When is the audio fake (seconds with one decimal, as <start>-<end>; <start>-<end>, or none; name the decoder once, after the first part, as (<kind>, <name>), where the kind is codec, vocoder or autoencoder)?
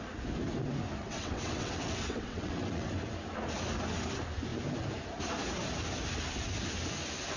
1.0-2.9 (vocoder, WaveNeXt)